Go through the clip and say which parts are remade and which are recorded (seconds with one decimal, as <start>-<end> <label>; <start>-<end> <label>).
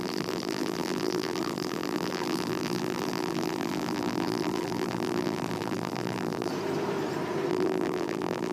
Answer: 0.0-6.5 remade; 6.5-7.5 recorded; 7.5-8.5 remade